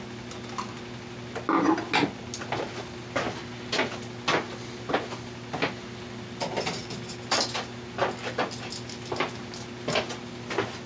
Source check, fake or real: real